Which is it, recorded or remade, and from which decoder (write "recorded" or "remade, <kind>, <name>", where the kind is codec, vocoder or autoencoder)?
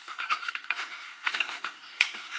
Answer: remade, codec, SNAC